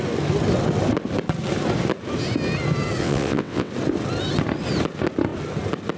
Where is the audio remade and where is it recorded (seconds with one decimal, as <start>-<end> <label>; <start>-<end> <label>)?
0.0-3.0 recorded; 3.0-3.7 remade; 3.7-6.0 recorded